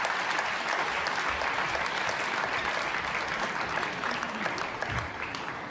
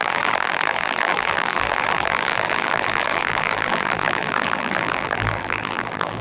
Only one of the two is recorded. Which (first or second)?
first